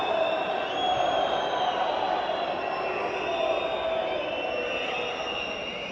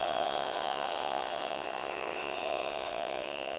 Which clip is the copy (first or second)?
second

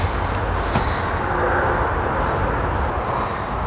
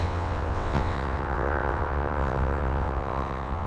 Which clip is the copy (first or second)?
second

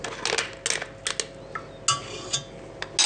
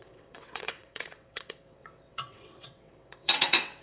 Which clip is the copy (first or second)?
second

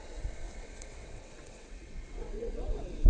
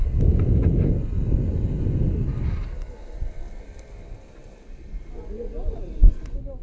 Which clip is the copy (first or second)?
first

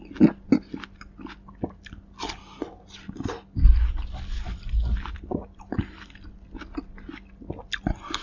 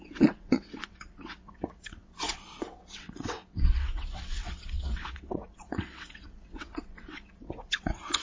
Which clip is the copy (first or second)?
second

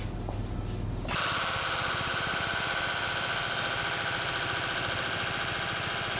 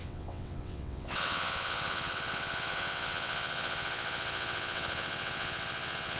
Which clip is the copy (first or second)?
second